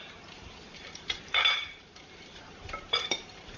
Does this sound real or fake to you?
fake